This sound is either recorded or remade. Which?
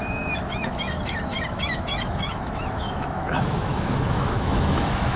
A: remade